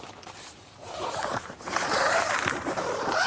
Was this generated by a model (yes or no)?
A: yes